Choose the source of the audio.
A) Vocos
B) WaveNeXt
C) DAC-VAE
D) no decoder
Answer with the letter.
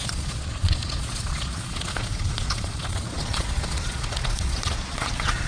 A